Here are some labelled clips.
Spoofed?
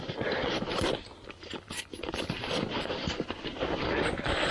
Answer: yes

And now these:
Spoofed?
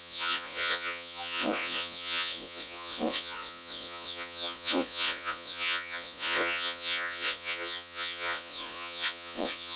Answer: yes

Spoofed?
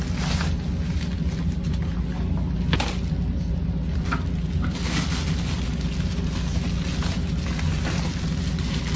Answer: no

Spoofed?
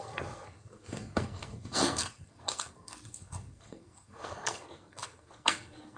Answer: yes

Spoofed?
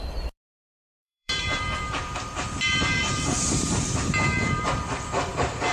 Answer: yes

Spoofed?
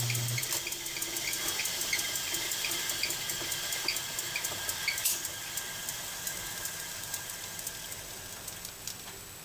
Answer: no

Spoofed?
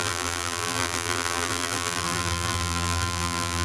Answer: yes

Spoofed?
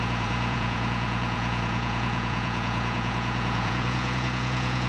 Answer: yes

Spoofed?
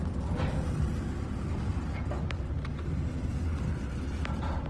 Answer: no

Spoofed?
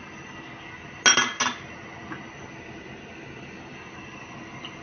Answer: no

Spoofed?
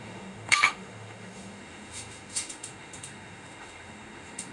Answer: yes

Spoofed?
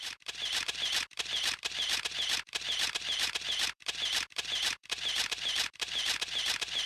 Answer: yes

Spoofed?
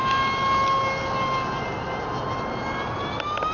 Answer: no